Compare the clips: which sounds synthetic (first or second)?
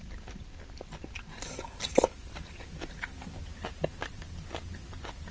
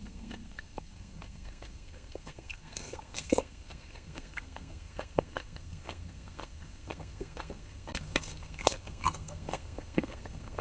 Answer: second